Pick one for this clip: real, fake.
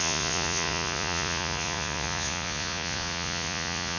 fake